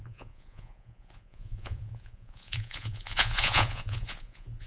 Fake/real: fake